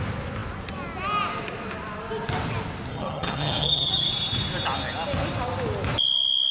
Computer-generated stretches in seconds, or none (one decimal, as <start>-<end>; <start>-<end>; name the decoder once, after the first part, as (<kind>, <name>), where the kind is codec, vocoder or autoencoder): 2.9-4.1 (vocoder, HiFi-GAN)